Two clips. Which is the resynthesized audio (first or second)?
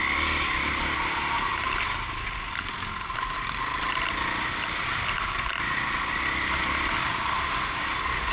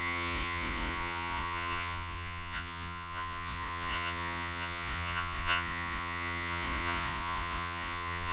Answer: second